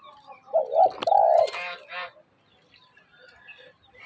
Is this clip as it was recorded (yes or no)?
yes